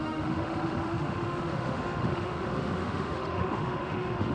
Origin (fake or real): fake